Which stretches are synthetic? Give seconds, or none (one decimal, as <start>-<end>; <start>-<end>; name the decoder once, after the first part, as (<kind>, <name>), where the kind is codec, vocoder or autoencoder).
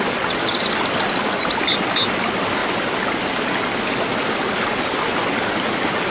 none